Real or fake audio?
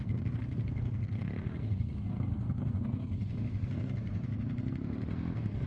fake